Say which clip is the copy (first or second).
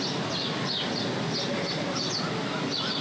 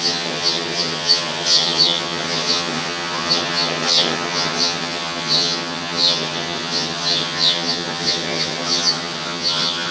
second